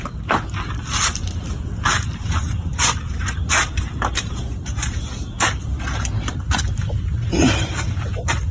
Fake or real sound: real